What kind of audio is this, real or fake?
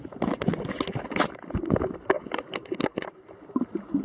real